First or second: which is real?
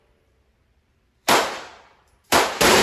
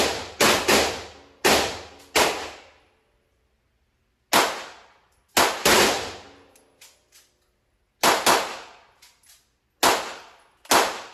second